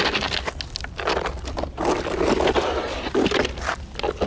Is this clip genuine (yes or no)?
yes